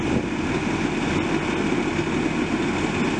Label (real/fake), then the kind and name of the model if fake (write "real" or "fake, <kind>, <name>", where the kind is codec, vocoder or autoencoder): real